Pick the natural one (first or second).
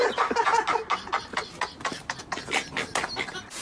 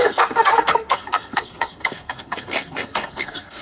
first